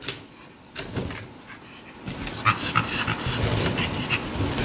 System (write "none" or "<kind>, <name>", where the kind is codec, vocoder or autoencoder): none